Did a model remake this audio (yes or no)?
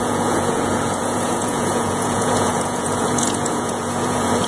yes